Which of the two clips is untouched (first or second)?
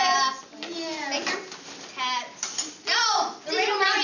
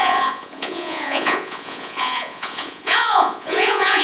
first